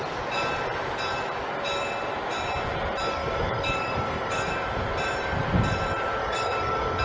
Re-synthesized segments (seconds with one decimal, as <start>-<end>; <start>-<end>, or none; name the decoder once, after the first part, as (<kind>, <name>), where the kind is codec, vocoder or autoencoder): 3.1-4.5 (codec, DAC); 6.2-7.0